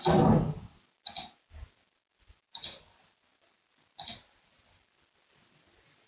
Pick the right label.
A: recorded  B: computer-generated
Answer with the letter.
A